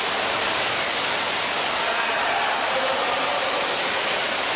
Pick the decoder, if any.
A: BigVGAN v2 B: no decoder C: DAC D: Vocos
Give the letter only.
B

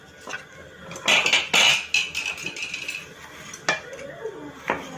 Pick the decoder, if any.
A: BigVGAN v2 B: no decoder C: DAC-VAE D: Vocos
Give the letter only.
B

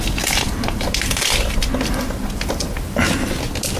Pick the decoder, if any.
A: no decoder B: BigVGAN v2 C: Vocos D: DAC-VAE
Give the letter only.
A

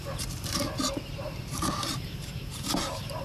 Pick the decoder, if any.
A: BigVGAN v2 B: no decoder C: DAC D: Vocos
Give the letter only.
A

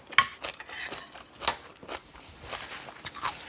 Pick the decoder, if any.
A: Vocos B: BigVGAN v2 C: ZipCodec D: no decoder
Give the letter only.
D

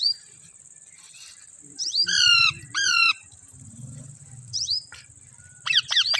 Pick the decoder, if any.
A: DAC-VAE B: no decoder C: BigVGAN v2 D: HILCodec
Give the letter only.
C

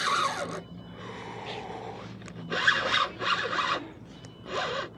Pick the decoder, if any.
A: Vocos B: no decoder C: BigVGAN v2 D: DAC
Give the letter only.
B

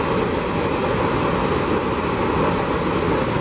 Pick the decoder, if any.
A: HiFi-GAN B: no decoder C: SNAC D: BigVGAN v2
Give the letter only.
B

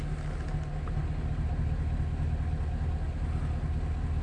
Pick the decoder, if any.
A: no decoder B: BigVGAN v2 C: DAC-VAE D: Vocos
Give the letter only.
A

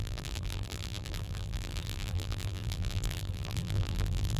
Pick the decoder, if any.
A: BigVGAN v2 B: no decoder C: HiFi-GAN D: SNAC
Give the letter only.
A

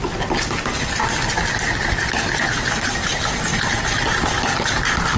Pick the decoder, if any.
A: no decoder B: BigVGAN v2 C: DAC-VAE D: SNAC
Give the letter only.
A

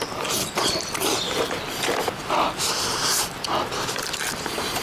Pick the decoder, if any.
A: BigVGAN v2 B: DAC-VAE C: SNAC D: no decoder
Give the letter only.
A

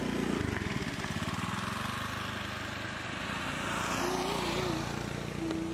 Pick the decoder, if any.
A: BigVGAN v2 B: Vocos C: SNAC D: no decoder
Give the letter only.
D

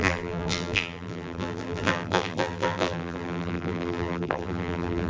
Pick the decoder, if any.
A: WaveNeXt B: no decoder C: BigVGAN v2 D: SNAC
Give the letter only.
C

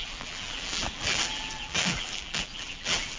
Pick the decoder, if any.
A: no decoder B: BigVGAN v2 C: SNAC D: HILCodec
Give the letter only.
B